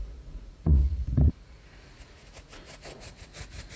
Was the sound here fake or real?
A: fake